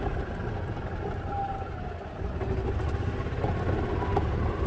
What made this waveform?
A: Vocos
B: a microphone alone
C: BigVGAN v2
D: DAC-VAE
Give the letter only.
B